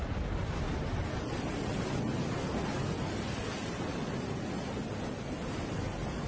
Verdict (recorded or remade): recorded